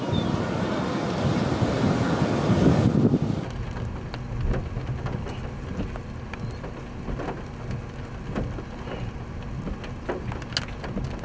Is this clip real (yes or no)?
yes